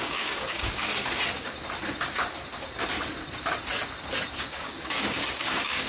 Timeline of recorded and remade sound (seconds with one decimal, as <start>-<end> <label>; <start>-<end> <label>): 0.0-0.9 remade; 0.9-4.4 recorded; 4.4-5.9 remade